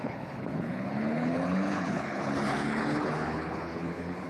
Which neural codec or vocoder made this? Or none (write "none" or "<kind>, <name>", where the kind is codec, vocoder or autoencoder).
codec, HILCodec